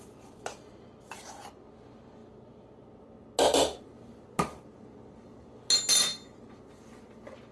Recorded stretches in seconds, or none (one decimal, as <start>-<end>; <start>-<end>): 0.0-7.5